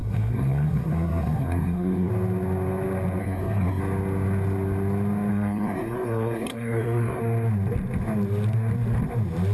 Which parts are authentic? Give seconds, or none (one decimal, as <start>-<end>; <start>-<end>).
2.1-3.2; 3.8-5.3; 7.2-9.5